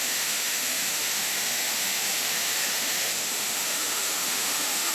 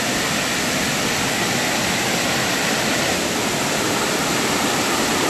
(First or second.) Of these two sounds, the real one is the second